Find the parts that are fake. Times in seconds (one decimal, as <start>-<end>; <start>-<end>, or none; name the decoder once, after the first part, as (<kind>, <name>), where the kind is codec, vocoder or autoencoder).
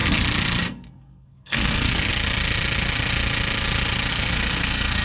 0.6-2.1 (codec, SNAC); 4.1-5.0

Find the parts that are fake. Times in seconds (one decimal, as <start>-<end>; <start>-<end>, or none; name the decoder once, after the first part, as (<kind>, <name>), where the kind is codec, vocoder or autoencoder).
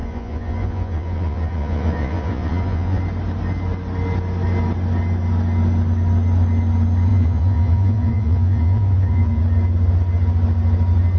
0.0-3.0 (vocoder, Vocos); 7.1-9.4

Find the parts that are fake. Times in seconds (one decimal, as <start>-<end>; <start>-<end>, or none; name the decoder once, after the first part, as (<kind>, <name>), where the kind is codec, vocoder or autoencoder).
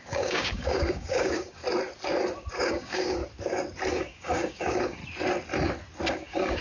0.0-1.6 (codec, DAC); 2.5-3.2; 3.9-5.0; 6.1-6.6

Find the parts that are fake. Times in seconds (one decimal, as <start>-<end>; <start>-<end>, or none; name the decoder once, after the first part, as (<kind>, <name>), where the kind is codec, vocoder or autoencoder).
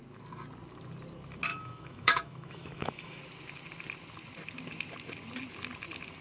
1.5-3.2 (autoencoder, DAC-VAE)